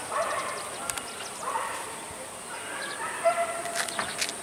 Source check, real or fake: real